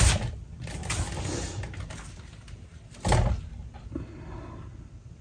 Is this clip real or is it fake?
real